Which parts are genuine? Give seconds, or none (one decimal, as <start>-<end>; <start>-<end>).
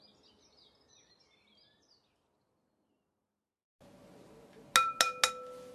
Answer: 0.0-5.7